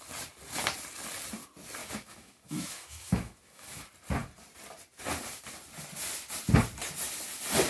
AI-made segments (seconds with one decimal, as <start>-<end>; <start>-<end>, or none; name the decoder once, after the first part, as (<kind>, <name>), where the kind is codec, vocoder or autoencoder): 1.8-3.8 (autoencoder, DAC-VAE)